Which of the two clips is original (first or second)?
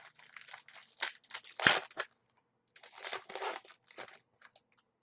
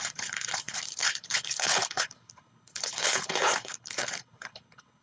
first